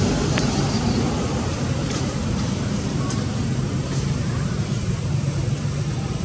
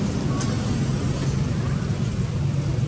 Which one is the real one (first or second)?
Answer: second